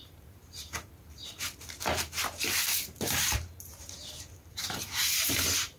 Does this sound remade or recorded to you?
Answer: remade